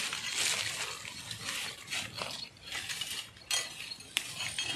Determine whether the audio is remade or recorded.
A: recorded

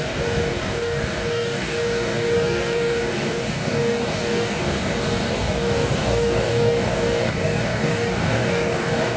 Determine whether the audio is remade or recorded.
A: remade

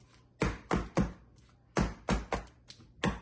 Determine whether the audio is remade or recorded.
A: recorded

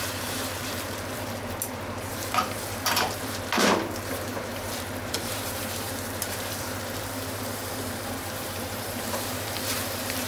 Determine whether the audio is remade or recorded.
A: remade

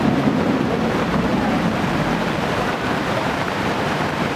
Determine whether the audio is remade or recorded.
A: remade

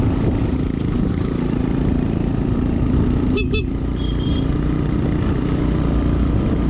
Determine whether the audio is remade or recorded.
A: remade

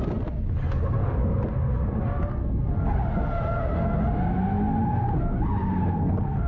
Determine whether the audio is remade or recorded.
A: recorded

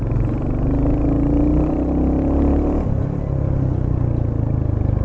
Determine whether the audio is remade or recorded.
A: recorded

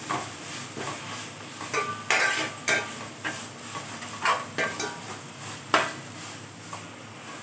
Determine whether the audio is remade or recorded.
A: recorded